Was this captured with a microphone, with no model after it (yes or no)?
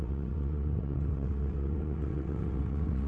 no